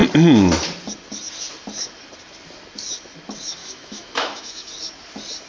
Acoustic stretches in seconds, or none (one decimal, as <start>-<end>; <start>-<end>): 0.0-3.6; 4.7-5.5